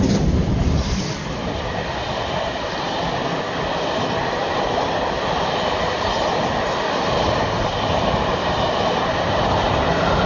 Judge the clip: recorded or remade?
remade